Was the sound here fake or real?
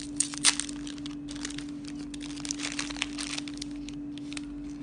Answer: real